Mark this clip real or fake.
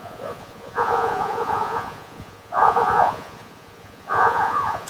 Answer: fake